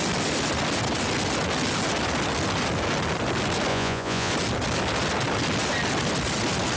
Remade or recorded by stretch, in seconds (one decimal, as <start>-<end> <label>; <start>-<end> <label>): 0.0-3.7 recorded; 3.7-4.3 remade; 4.3-6.8 recorded